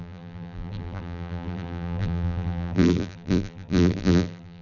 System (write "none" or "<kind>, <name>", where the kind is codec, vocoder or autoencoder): vocoder, BigVGAN v2